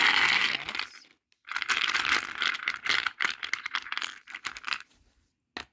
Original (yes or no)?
yes